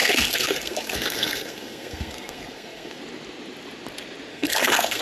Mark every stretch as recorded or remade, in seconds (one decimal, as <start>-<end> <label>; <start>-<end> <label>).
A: 0.0-3.0 remade; 3.0-4.3 recorded; 4.3-5.0 remade